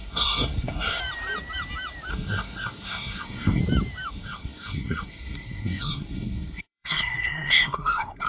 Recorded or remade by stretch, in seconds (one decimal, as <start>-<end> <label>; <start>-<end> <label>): 0.0-1.0 remade; 1.0-2.1 recorded; 2.1-3.6 remade; 3.6-4.1 recorded; 4.1-8.3 remade